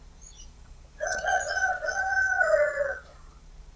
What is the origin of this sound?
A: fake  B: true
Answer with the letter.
A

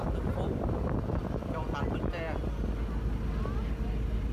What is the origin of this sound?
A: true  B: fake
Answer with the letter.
A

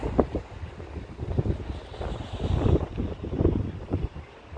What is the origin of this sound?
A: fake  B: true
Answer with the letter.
B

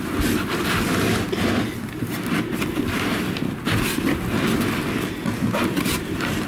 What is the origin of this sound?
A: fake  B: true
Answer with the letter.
B